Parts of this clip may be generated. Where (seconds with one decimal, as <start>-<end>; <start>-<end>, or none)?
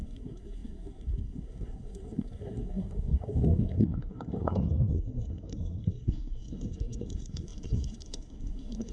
0.0-8.9